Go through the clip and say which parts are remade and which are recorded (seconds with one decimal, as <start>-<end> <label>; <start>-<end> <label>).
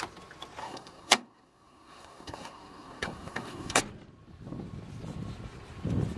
0.0-0.6 recorded; 0.6-3.8 remade; 3.8-6.2 recorded